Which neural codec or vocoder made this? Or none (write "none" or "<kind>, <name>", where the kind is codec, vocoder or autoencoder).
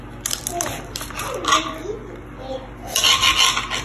none